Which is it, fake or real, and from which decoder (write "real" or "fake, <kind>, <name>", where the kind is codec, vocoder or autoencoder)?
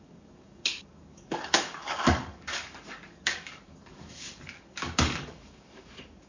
fake, codec, DAC